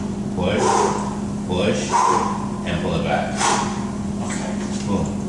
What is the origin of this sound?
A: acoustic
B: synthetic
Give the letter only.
A